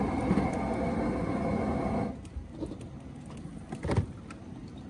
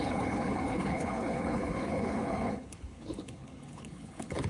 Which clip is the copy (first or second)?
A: second